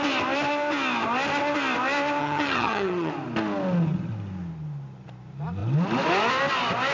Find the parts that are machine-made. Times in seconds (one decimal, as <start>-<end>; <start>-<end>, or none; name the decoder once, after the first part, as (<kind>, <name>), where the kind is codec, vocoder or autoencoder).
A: 2.2-3.1 (vocoder, HiFi-GAN)